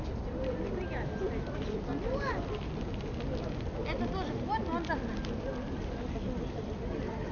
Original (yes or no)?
yes